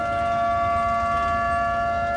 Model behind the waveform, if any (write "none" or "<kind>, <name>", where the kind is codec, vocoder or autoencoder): none